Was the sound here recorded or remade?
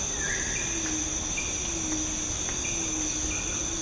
recorded